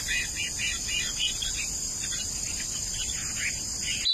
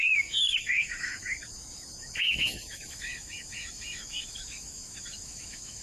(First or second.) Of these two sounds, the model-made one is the second